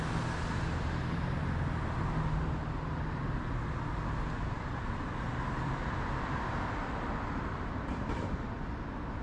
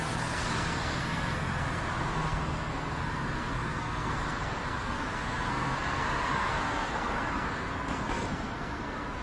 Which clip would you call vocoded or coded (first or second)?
second